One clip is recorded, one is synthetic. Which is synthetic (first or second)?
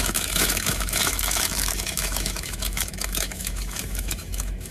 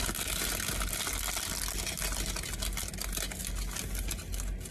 first